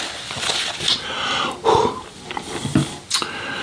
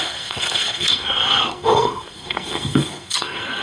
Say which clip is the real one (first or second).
first